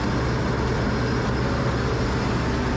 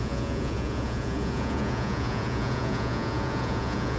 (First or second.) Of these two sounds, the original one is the first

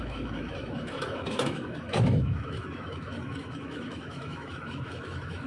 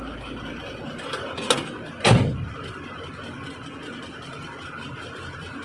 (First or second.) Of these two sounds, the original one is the second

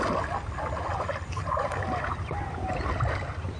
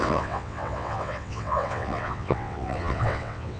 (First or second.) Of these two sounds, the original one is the first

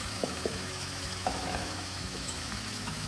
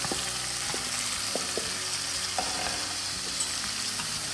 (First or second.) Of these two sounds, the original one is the second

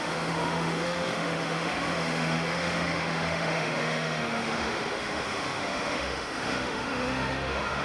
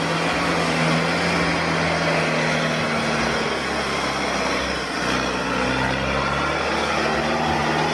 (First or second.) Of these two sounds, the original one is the second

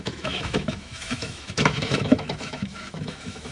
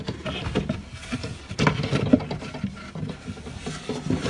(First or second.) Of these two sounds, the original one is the second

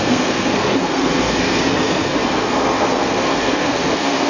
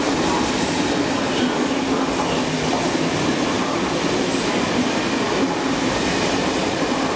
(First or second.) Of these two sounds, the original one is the second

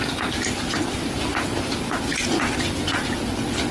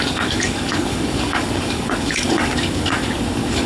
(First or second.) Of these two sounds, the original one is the first